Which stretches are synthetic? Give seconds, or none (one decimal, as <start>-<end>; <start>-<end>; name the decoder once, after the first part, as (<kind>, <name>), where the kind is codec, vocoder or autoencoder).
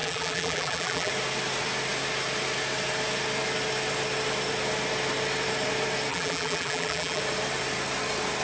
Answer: 0.0-1.1 (vocoder, BigVGAN v2); 6.1-7.2